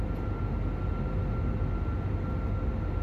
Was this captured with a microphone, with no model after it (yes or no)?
yes